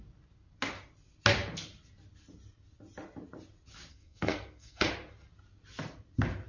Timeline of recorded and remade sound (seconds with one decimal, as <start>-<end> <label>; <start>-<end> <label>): 0.0-3.9 recorded; 3.9-4.9 remade; 4.9-6.5 recorded